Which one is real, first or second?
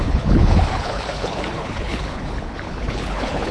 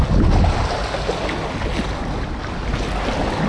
second